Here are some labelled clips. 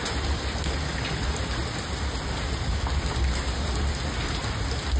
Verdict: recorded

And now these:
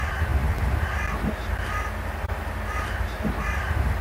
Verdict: recorded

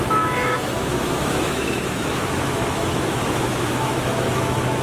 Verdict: remade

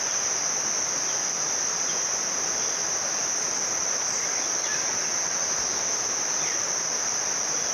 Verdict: recorded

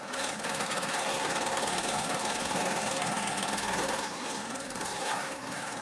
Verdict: remade